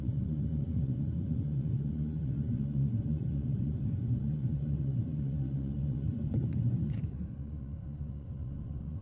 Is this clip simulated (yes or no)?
yes